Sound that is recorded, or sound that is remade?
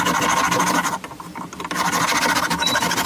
recorded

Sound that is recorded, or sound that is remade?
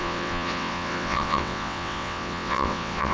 remade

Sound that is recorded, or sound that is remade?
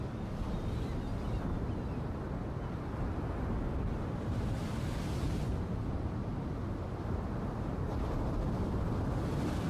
recorded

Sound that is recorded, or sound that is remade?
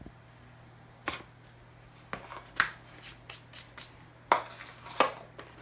recorded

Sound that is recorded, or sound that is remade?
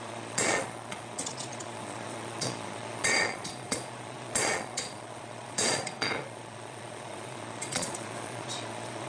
remade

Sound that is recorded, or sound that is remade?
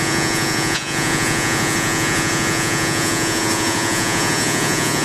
remade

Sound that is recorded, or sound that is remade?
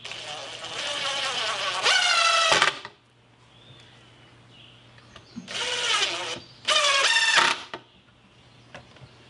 recorded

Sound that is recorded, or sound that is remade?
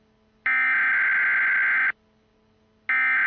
recorded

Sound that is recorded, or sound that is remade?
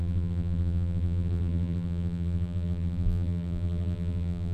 remade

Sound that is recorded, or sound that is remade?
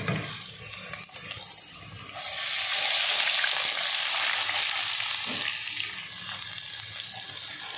recorded